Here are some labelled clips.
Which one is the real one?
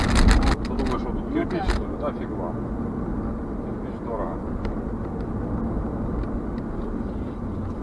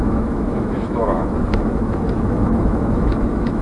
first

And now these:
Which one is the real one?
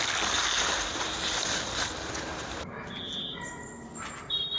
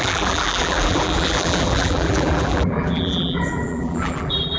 first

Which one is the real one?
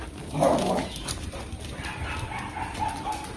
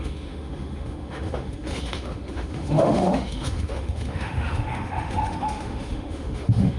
first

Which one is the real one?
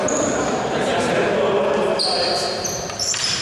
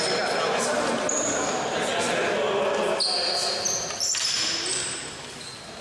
second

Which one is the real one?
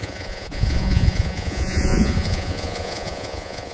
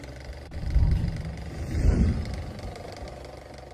second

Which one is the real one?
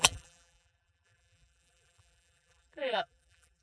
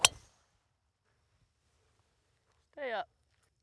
second